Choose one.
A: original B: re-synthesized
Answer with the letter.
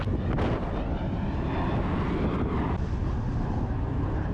A